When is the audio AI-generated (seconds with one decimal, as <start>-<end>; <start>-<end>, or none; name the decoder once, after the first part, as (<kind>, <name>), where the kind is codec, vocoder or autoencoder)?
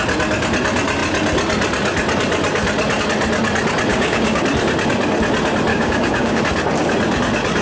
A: 3.9-4.4 (codec, DAC); 5.7-6.4